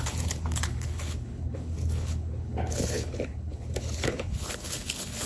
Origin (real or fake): fake